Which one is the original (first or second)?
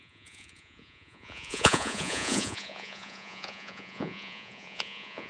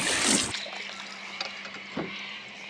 second